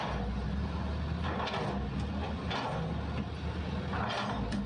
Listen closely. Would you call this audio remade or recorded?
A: recorded